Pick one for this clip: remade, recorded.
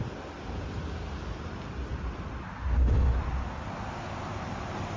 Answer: recorded